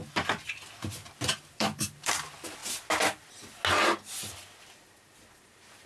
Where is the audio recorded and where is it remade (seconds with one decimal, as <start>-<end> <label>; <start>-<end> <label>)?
0.0-1.3 recorded; 1.3-2.6 remade; 2.6-5.4 recorded; 5.4-5.9 remade